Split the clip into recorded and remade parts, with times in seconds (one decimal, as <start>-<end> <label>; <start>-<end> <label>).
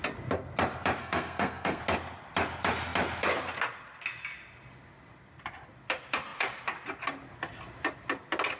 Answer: 0.0-1.0 recorded; 1.0-1.8 remade; 1.8-8.6 recorded